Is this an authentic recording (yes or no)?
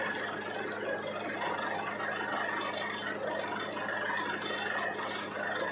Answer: yes